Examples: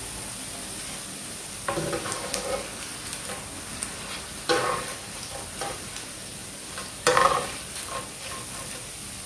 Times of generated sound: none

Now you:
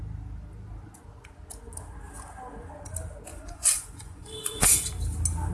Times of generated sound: 3.3-4.9 (vocoder, Vocos)